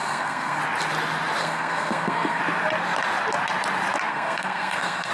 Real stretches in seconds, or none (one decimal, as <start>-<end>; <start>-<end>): 0.6-1.4; 2.4-4.1